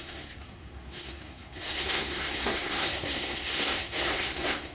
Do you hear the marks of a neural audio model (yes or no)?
yes